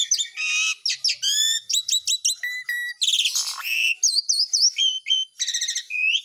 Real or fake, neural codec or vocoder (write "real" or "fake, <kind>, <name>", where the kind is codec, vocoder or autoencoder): real